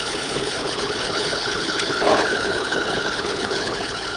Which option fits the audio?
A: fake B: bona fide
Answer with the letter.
A